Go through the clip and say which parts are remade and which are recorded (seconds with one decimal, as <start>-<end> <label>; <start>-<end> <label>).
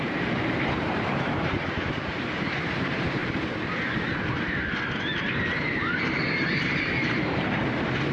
0.0-3.2 remade; 3.2-5.2 recorded; 5.2-8.1 remade